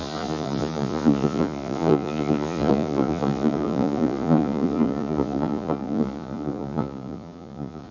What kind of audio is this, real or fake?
fake